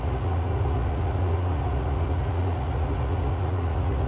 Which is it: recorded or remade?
remade